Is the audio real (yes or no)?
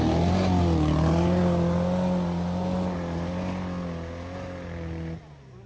yes